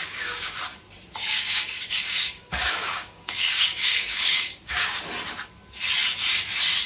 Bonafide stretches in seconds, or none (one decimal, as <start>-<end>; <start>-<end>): 0.6-1.2; 5.0-6.9